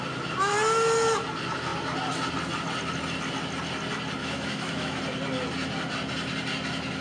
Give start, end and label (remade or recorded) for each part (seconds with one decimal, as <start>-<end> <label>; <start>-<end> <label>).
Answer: 0.0-4.2 recorded; 4.2-5.0 remade; 5.0-7.0 recorded